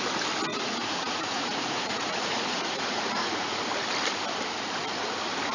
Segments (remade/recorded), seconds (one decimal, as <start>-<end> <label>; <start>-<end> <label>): 0.0-0.5 recorded; 0.5-3.6 remade; 3.6-5.5 recorded